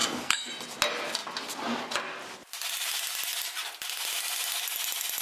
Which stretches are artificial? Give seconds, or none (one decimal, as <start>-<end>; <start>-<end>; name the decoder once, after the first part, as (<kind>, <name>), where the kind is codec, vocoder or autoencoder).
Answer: 0.0-0.5 (codec, SNAC)